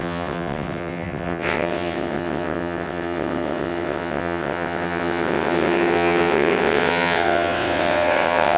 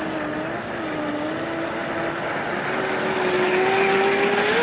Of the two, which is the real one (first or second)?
second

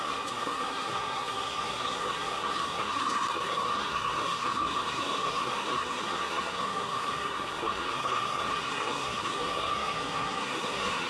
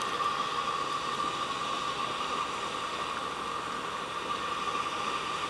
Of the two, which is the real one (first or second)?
second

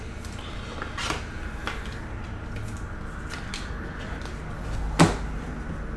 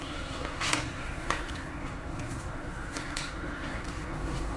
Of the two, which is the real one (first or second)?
first